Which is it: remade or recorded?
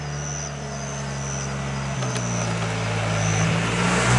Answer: recorded